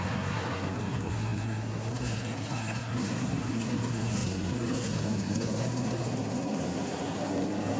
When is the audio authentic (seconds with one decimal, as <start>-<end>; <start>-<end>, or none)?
none